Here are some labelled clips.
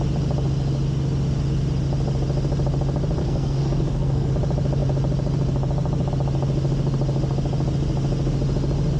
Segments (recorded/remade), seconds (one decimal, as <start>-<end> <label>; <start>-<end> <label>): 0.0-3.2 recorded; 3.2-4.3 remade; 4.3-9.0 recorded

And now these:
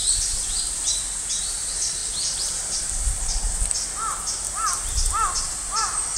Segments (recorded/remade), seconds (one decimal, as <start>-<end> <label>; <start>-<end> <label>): 0.0-1.4 recorded; 1.4-2.0 remade; 2.0-5.7 recorded; 5.7-6.2 remade

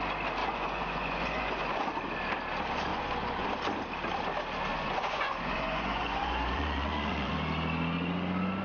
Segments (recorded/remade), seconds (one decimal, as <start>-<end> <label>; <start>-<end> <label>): 0.0-0.4 recorded; 0.4-1.8 remade; 1.8-2.9 recorded; 2.9-3.5 remade; 3.5-4.7 recorded; 4.7-7.3 remade; 7.3-8.6 recorded

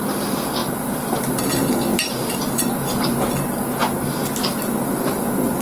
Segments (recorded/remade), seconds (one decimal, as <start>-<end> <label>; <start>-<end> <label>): 0.0-0.6 recorded; 0.6-1.2 remade; 1.2-1.9 recorded; 1.9-2.4 remade; 2.4-2.9 recorded; 2.9-3.8 remade; 3.8-5.6 recorded

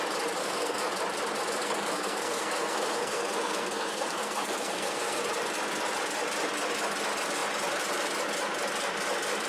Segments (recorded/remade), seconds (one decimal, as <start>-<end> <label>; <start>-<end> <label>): 0.0-0.4 recorded; 0.4-0.9 remade; 0.9-1.6 recorded; 1.6-5.2 remade; 5.2-9.5 recorded

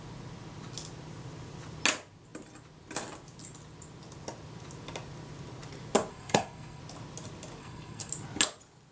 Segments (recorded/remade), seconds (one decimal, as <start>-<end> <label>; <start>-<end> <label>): 0.0-6.1 recorded; 6.1-6.8 remade; 6.8-7.6 recorded; 7.6-8.1 remade; 8.1-8.9 recorded

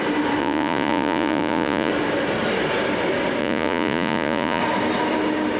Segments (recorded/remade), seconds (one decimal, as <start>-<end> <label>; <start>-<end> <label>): 0.0-0.4 recorded; 0.4-1.9 remade; 1.9-3.4 recorded; 3.4-4.6 remade; 4.6-5.6 recorded

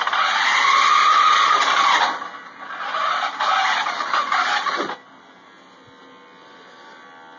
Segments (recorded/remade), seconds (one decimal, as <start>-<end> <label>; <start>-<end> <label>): 0.0-7.4 recorded